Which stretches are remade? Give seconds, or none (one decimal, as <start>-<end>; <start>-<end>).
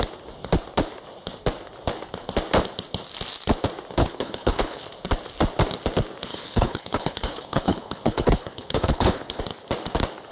4.0-4.8; 6.3-9.4